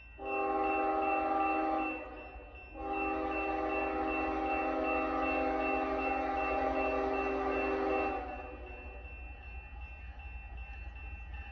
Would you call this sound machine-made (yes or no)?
no